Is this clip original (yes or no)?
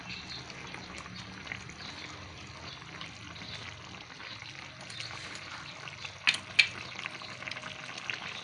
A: yes